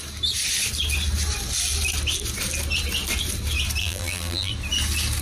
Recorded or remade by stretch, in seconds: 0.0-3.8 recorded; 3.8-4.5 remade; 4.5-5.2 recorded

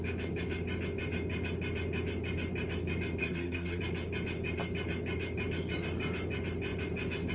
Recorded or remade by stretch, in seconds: 0.0-3.2 recorded; 3.2-3.8 remade; 3.8-7.3 recorded

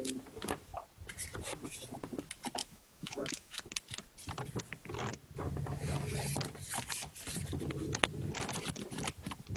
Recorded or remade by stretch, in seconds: 0.0-2.6 recorded; 2.6-3.6 remade; 3.6-9.6 recorded

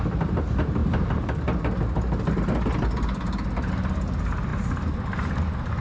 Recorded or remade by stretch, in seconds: 0.0-5.8 recorded

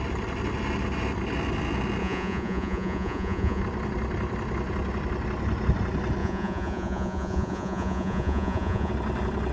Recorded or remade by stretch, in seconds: 0.0-2.0 recorded; 2.0-3.6 remade; 3.6-6.2 recorded; 6.2-8.9 remade; 8.9-9.5 recorded

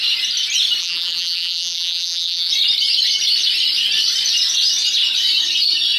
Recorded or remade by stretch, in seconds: 0.0-0.8 recorded; 0.8-2.5 remade; 2.5-6.0 recorded

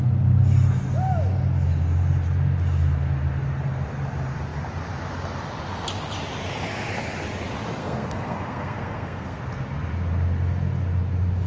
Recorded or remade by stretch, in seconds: 0.0-7.8 recorded; 7.8-9.4 remade; 9.4-11.5 recorded